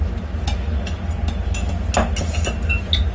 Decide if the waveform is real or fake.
real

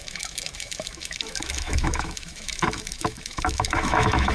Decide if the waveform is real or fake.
fake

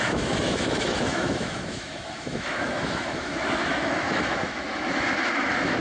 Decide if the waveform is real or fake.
fake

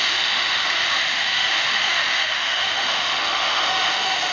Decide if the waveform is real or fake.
fake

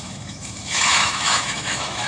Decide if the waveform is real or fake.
fake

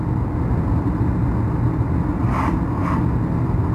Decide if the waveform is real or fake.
real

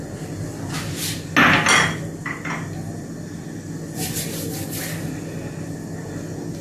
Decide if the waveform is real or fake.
real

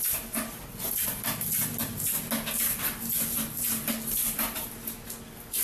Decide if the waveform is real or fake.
real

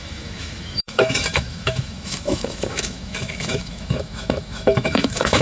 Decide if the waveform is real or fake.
fake